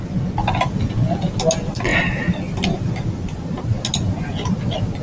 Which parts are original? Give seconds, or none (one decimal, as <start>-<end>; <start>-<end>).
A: 0.0-5.0